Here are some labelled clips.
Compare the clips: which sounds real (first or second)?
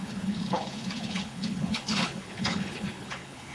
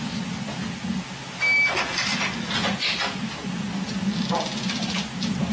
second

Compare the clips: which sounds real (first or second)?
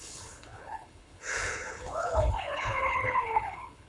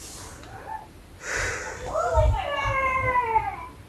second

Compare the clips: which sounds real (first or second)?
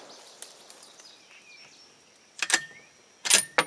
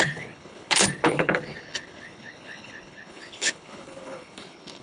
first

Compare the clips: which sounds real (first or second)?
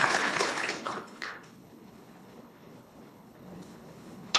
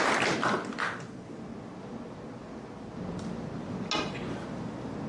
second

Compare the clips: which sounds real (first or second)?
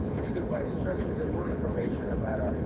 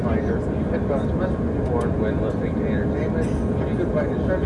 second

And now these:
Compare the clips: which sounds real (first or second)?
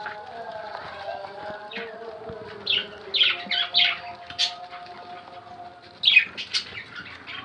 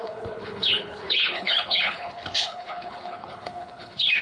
first